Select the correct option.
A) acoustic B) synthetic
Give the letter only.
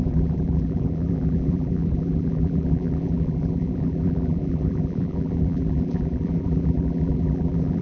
B